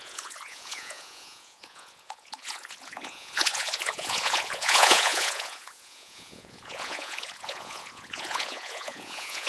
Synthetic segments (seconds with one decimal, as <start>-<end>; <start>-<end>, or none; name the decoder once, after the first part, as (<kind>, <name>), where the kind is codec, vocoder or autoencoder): 0.0-9.5 (vocoder, Vocos)

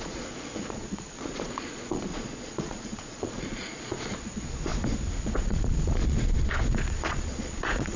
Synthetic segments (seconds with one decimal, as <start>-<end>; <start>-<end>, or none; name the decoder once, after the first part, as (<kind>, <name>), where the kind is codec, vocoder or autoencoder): 0.0-4.7 (vocoder, Vocos); 5.2-8.0